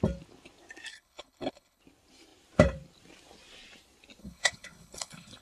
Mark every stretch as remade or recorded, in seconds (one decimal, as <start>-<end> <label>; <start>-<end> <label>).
0.0-0.9 recorded; 0.9-1.8 remade; 1.8-4.2 recorded; 4.2-5.4 remade